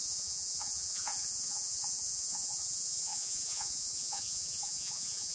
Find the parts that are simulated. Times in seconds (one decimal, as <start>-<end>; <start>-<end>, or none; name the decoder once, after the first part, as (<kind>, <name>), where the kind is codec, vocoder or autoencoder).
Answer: 0.0-5.3 (vocoder, Vocos)